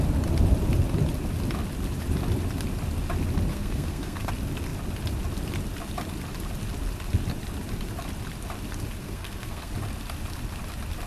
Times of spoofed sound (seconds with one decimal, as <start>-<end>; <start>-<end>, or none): 3.5-4.3; 9.0-9.7